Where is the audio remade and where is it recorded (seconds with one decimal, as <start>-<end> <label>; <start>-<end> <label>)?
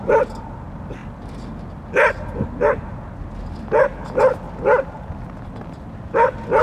0.0-6.6 recorded